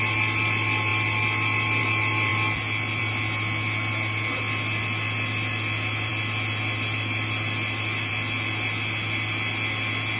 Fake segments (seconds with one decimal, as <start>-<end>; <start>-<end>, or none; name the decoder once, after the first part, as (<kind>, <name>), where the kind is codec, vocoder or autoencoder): none